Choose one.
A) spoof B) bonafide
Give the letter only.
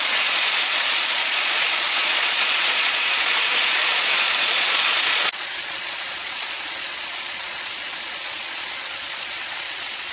A